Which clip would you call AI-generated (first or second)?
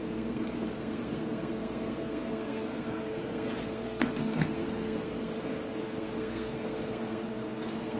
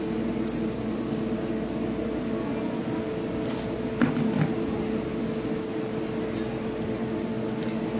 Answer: first